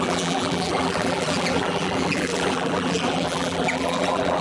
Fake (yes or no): yes